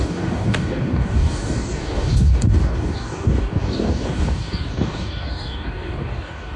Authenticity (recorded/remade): remade